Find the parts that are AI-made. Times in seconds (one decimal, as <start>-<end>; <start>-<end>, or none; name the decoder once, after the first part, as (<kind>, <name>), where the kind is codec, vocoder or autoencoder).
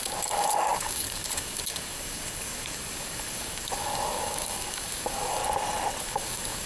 0.0-5.4 (codec, DAC); 6.0-6.7